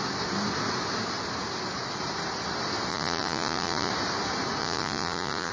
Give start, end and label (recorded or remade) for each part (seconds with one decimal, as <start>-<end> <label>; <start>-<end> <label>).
0.0-2.9 recorded; 2.9-3.9 remade; 3.9-4.6 recorded; 4.6-5.5 remade